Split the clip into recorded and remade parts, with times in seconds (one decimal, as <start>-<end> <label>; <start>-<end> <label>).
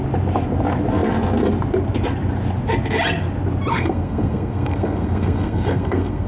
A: 0.0-3.7 recorded; 3.7-6.3 remade